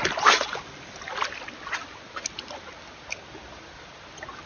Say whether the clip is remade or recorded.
recorded